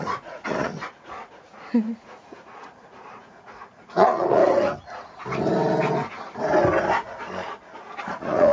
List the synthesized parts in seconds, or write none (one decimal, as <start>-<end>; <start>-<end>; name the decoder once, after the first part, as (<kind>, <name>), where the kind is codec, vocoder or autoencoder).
0.0-4.4 (vocoder, Vocos); 8.0-8.5